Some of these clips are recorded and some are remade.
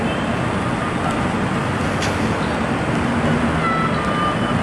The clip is recorded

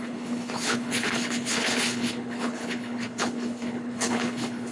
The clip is remade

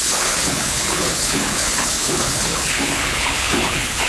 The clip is remade